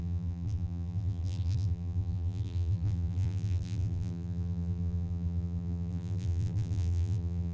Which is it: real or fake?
fake